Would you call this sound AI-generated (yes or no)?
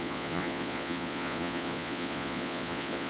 yes